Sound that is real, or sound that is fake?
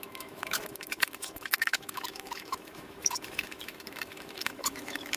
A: fake